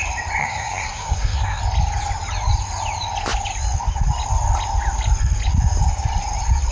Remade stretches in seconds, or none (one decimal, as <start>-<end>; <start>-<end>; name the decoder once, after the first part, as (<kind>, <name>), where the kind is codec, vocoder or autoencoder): 0.4-1.6 (codec, SNAC)